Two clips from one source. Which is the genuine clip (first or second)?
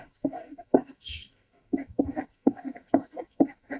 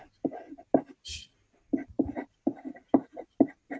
second